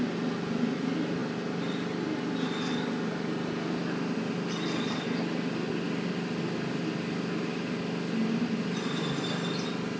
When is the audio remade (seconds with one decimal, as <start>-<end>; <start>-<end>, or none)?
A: none